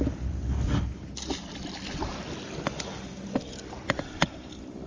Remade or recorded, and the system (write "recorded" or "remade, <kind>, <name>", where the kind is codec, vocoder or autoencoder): recorded